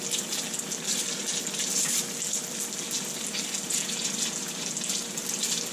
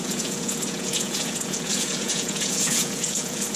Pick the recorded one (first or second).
first